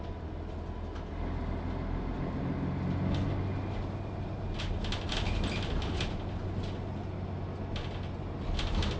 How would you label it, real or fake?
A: real